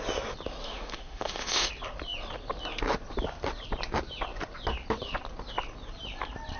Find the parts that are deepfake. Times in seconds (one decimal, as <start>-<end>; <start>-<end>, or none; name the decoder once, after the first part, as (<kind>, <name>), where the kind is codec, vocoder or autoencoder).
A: 0.6-1.7 (autoencoder, DAC-VAE)